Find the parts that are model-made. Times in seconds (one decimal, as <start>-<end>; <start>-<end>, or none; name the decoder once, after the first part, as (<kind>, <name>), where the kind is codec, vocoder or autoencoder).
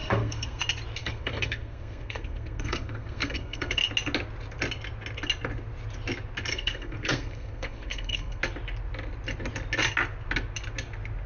0.0-0.6 (codec, SNAC); 1.0-3.8; 6.5-8.4